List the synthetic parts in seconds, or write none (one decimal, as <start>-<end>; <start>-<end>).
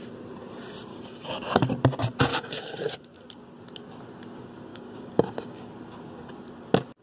0.9-1.7; 2.3-2.9; 4.7-5.7